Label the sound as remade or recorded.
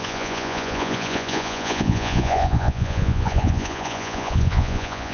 remade